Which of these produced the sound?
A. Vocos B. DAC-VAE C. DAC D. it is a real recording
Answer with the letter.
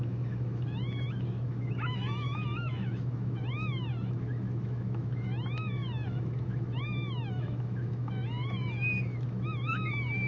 B